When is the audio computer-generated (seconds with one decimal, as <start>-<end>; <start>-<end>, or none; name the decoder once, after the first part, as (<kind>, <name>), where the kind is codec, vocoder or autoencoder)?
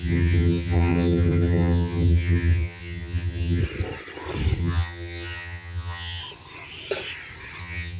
0.0-3.6 (vocoder, HiFi-GAN); 4.6-6.2; 7.6-8.0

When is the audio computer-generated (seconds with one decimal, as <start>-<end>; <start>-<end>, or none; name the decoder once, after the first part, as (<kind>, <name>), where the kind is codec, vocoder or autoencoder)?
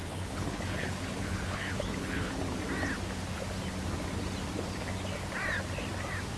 0.0-2.3 (codec, HILCodec)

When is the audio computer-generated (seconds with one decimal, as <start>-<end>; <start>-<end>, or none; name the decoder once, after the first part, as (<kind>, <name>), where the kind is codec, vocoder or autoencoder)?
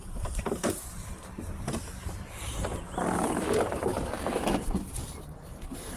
0.0-2.7 (vocoder, BigVGAN v2); 3.3-3.9; 5.5-6.0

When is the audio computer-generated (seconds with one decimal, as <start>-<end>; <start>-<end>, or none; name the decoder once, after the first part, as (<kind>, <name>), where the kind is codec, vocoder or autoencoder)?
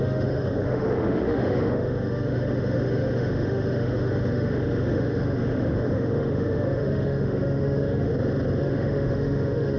0.0-8.1 (autoencoder, DAC-VAE); 8.6-9.8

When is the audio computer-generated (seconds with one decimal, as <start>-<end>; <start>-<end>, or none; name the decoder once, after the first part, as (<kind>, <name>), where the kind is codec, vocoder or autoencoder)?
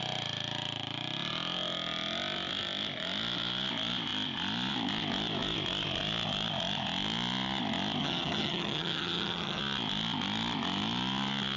8.0-9.6 (vocoder, HiFi-GAN)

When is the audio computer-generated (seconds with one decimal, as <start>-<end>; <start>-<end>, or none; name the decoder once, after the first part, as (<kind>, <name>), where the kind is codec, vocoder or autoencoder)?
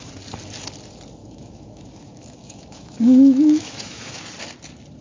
1.2-4.2 (autoencoder, DAC-VAE)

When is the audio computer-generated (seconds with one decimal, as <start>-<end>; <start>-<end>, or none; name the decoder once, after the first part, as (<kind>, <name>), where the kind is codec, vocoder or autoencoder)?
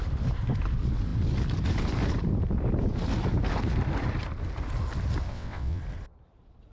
5.3-5.8 (vocoder, WaveNeXt)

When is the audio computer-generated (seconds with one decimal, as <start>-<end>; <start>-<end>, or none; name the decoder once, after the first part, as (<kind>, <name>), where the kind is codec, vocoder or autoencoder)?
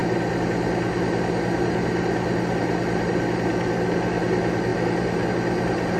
none